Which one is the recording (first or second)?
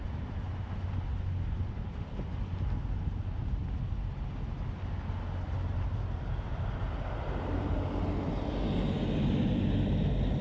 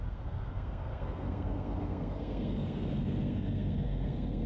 first